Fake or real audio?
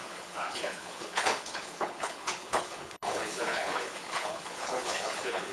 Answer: fake